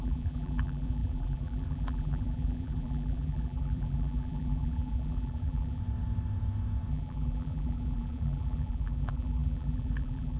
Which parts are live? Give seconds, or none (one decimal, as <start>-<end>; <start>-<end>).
5.8-6.9